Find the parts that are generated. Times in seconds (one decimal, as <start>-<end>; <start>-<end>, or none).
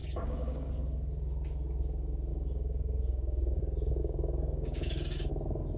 0.0-0.7; 2.3-3.6; 4.0-5.3